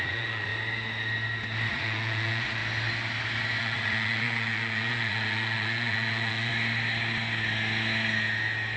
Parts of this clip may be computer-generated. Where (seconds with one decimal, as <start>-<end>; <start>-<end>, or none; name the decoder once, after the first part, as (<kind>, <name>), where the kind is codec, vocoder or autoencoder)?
0.0-0.5 (vocoder, Vocos); 1.7-2.6; 3.6-6.5